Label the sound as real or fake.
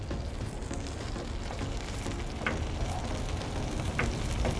real